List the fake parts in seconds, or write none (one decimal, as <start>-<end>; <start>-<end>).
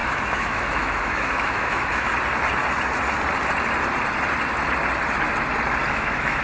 0.0-2.1; 5.9-6.4